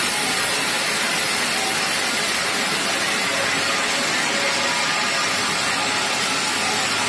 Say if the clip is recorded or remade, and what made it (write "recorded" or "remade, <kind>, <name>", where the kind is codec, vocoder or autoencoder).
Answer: recorded